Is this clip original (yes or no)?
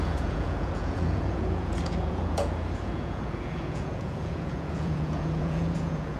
no